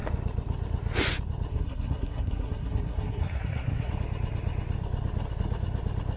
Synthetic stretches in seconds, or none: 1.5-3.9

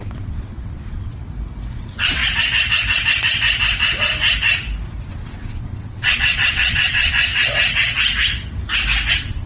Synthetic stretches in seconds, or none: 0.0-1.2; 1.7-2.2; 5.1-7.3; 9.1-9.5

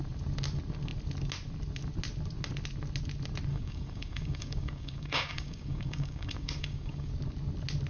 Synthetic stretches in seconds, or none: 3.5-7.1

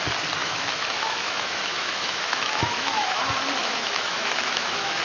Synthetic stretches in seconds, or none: 0.4-3.2; 3.6-5.0